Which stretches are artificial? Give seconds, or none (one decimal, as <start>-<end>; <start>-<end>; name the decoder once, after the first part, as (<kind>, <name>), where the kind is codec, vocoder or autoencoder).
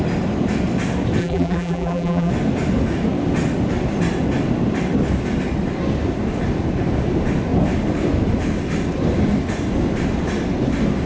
1.2-2.3 (vocoder, BigVGAN v2)